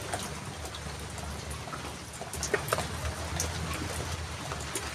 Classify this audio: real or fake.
real